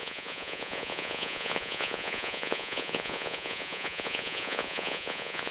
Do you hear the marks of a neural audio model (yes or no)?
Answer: yes